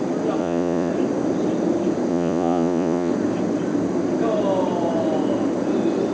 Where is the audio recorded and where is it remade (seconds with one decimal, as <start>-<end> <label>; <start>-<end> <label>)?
0.0-0.4 recorded; 0.4-0.9 remade; 0.9-2.1 recorded; 2.1-3.1 remade; 3.1-6.1 recorded